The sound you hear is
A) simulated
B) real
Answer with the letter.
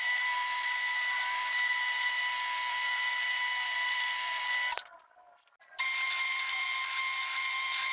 A